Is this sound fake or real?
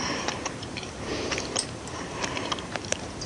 fake